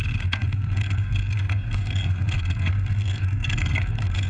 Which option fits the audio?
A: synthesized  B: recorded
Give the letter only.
A